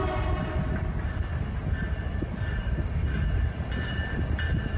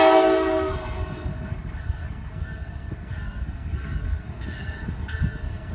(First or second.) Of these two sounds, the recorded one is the first